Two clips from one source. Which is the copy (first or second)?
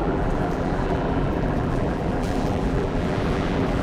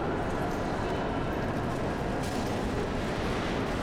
first